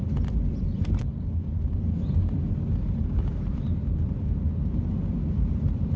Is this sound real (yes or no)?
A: yes